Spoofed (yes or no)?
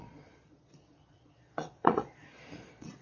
yes